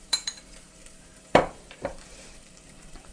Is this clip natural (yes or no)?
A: no